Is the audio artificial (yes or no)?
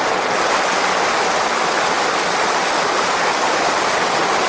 no